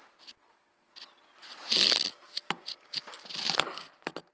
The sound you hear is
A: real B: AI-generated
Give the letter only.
A